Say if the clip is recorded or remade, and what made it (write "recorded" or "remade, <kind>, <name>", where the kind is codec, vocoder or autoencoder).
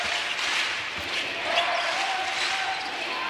recorded